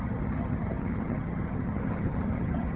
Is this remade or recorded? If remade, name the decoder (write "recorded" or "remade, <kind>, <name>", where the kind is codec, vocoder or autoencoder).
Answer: remade, vocoder, HiFi-GAN